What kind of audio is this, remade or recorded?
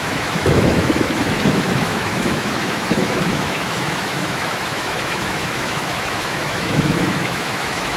remade